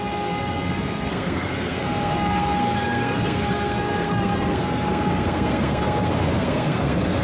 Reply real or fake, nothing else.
fake